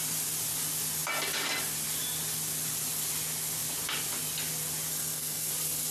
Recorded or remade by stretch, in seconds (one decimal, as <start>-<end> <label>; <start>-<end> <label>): 0.0-4.9 recorded; 4.9-5.5 remade; 5.5-5.9 recorded